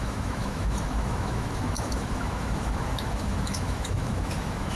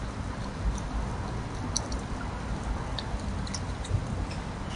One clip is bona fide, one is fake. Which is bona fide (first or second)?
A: second